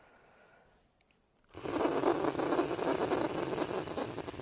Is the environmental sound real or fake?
fake